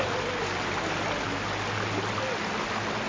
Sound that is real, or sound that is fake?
real